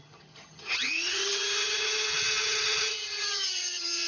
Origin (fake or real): fake